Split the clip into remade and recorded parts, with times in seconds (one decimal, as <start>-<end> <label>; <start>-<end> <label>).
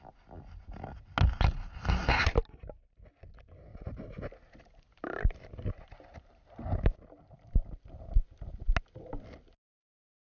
0.0-3.7 recorded; 3.7-4.3 remade; 4.3-4.9 recorded; 4.9-6.9 remade; 6.9-10.2 recorded